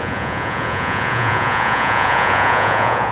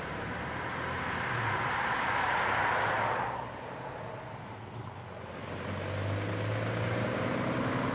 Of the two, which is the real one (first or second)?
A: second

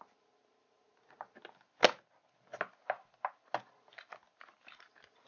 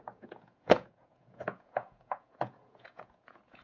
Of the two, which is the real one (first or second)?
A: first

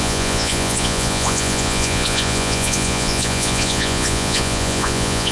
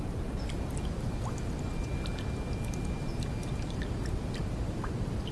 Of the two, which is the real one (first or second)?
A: second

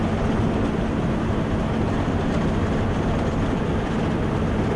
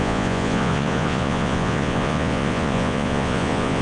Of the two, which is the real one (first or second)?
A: first